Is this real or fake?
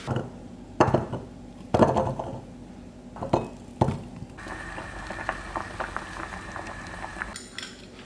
real